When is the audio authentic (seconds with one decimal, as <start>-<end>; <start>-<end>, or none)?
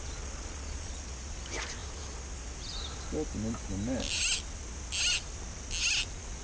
0.9-6.4